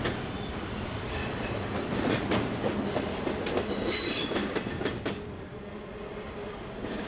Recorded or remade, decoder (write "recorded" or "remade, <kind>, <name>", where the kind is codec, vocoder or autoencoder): recorded